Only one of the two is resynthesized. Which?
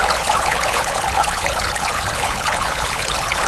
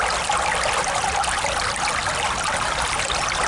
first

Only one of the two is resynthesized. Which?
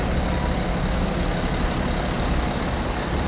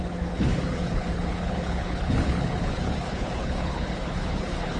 second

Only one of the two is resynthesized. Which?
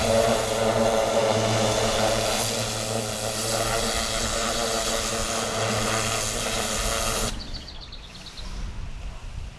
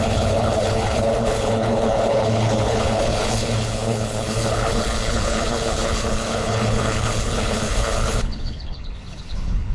second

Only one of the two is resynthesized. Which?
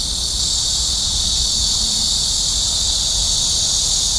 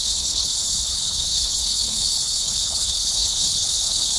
second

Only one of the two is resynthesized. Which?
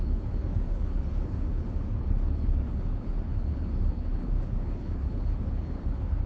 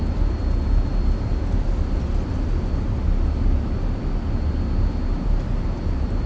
first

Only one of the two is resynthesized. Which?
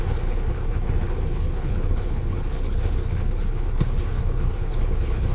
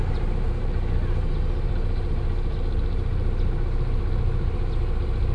first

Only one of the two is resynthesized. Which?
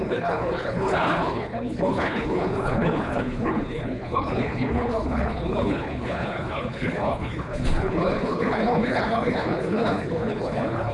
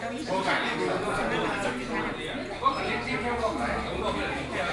first